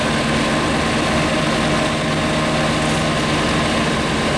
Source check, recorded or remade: recorded